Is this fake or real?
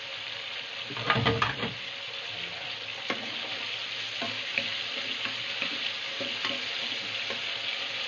real